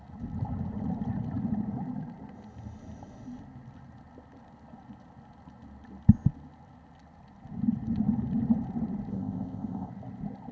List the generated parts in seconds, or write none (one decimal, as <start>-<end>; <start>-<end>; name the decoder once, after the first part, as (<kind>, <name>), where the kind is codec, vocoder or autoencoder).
9.1-9.9 (codec, ZipCodec)